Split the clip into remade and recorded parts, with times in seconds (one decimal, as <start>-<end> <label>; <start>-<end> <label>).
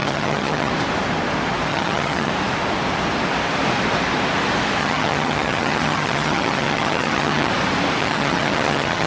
0.0-0.7 remade; 0.7-1.7 recorded; 1.7-2.3 remade; 2.3-4.8 recorded; 4.8-7.5 remade; 7.5-8.0 recorded; 8.0-9.1 remade